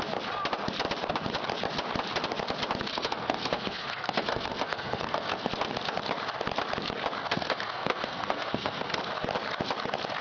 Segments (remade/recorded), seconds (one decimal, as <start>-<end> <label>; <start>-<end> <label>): 0.0-2.9 recorded; 2.9-5.5 remade; 5.5-7.2 recorded; 7.2-9.0 remade; 9.0-10.2 recorded